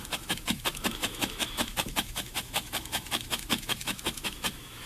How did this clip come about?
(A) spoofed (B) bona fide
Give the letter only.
A